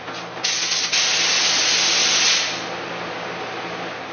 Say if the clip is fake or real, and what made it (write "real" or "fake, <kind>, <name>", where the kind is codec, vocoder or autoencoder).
real